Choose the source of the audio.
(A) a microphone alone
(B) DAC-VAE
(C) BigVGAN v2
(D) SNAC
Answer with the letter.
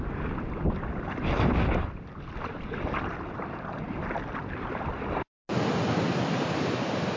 A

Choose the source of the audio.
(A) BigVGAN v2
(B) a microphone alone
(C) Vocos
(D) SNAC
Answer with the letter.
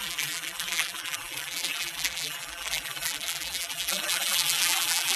A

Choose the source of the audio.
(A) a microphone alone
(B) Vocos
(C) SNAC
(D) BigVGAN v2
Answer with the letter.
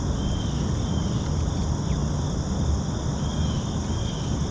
A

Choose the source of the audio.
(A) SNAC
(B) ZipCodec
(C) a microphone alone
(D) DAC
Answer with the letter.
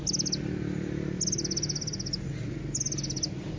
C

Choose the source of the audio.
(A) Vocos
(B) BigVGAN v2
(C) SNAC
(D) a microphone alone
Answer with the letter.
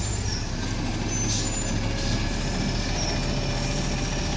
D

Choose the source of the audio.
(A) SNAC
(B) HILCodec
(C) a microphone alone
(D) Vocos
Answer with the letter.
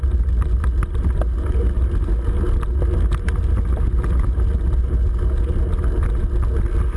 C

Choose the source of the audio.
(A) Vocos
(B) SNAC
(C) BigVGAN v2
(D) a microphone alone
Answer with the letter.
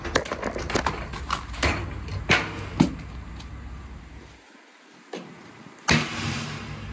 D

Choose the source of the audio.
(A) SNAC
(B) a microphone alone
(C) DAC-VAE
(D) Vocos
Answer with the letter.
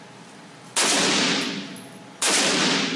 B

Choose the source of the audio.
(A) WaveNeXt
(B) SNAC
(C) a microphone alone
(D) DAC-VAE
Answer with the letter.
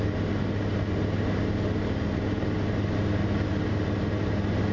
C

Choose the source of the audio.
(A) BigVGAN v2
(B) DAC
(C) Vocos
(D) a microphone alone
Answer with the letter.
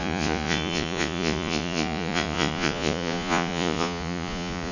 C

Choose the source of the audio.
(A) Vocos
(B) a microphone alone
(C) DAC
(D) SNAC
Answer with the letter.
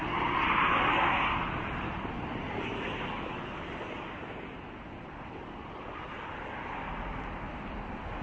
B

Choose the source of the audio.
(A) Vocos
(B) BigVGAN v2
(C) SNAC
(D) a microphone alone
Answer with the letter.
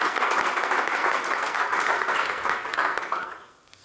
C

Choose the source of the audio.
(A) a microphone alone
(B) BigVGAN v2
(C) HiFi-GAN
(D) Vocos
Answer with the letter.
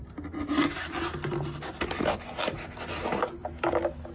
A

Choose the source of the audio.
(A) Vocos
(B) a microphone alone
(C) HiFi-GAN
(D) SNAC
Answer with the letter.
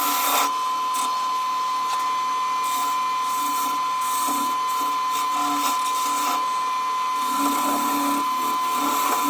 B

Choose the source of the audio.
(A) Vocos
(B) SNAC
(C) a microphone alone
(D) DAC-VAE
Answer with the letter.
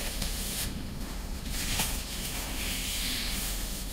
D